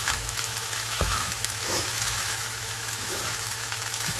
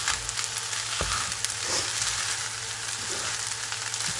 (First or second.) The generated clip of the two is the first